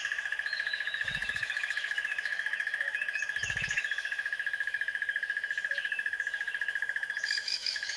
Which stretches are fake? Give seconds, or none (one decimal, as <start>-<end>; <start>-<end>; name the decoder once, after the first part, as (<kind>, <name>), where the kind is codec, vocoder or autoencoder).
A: 0.0-8.0 (autoencoder, DAC-VAE)